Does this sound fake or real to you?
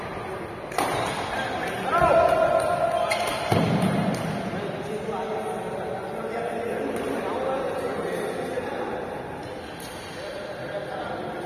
real